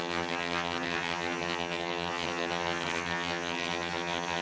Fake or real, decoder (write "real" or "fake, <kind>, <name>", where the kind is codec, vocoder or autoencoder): fake, vocoder, HiFi-GAN